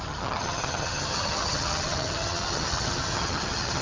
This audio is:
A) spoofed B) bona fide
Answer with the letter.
A